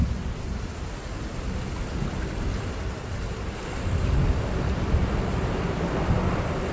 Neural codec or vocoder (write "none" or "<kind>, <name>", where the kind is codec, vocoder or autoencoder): none